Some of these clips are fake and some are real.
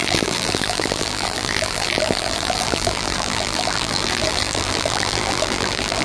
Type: fake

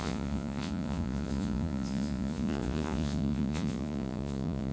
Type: fake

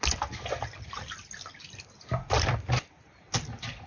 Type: real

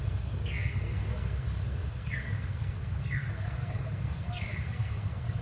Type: fake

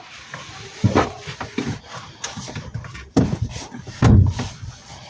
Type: real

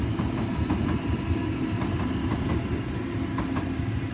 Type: real